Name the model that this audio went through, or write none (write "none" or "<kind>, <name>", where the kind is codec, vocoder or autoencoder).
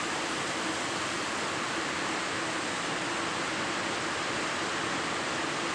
none